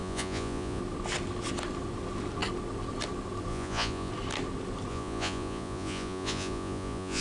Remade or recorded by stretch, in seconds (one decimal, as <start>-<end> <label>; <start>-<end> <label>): 0.0-0.8 remade; 0.8-3.5 recorded; 3.5-4.1 remade; 4.1-4.9 recorded; 4.9-7.2 remade